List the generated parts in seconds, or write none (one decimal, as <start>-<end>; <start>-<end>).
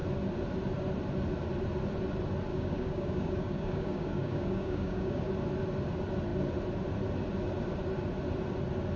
2.5-5.3